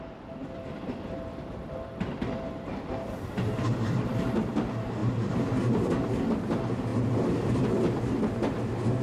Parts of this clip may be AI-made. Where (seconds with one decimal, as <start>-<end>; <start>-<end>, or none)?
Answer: 0.4-4.0; 5.0-5.9; 6.9-7.6